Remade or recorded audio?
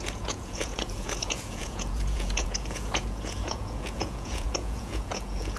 remade